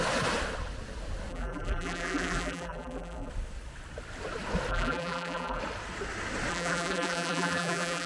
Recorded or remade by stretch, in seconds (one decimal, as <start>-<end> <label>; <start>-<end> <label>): 0.0-1.3 recorded; 1.3-3.3 remade; 3.3-4.7 recorded; 4.7-5.6 remade; 5.6-6.5 recorded; 6.5-8.1 remade